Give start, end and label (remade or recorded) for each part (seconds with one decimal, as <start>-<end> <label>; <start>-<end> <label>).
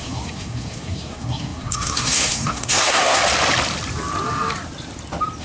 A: 0.0-3.2 remade; 3.2-5.4 recorded